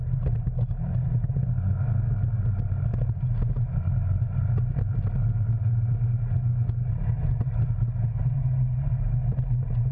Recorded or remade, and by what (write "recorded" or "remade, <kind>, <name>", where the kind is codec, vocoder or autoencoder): recorded